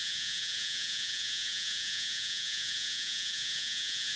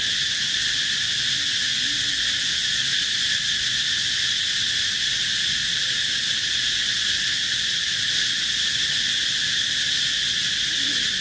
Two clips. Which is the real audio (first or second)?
second